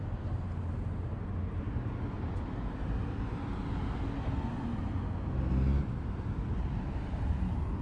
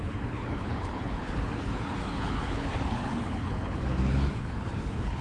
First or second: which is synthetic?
second